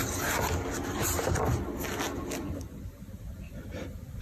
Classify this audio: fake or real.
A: real